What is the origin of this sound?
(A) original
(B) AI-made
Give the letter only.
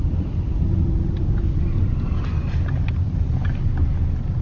A